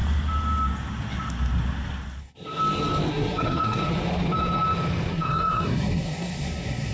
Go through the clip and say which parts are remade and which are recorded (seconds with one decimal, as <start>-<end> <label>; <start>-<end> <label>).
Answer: 0.0-2.2 recorded; 2.2-2.6 remade; 2.6-3.1 recorded; 3.1-3.8 remade; 3.8-5.1 recorded; 5.1-6.9 remade